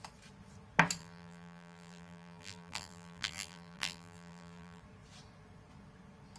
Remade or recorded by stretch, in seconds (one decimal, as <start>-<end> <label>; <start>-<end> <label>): 0.0-1.0 recorded; 1.0-4.8 remade; 4.8-6.4 recorded